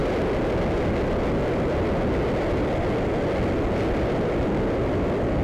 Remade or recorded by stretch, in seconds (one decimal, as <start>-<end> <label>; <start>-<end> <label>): 0.0-5.4 recorded